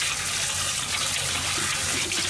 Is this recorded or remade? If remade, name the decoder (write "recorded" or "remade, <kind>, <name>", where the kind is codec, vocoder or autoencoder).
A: recorded